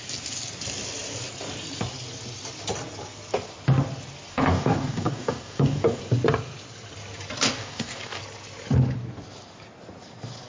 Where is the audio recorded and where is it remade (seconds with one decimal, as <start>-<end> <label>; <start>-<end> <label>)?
0.0-4.3 recorded; 4.3-6.0 remade; 6.0-7.6 recorded; 7.6-8.2 remade; 8.2-10.5 recorded